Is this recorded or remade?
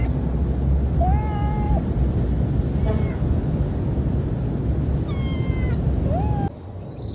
recorded